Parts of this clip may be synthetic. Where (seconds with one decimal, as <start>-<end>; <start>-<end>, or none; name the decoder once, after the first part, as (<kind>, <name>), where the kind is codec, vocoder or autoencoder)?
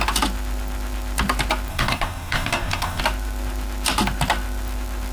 1.7-3.0 (codec, DAC)